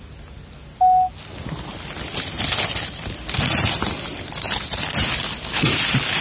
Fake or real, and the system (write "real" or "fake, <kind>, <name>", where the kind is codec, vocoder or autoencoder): real